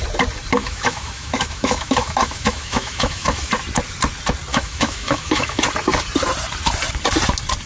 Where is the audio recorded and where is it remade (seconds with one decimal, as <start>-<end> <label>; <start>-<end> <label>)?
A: 0.0-0.6 recorded; 0.6-3.5 remade; 3.5-4.5 recorded; 4.5-5.6 remade; 5.6-7.7 recorded